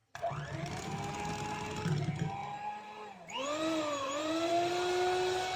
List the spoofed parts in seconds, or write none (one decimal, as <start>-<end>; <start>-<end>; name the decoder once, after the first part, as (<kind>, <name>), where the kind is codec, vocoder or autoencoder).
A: 0.0-0.8 (vocoder, BigVGAN v2); 2.4-4.7